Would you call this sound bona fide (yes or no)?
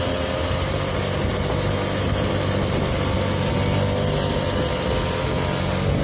yes